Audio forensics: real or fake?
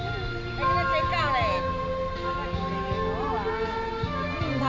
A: real